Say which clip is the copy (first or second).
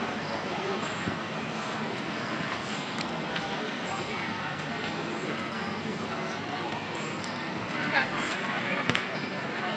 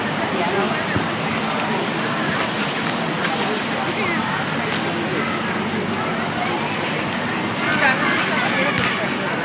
first